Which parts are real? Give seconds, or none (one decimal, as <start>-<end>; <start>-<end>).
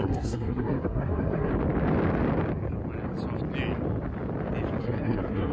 1.5-4.8